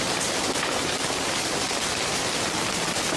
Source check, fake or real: real